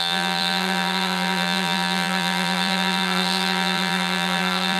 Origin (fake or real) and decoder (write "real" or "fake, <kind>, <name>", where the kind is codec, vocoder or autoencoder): fake, vocoder, BigVGAN v2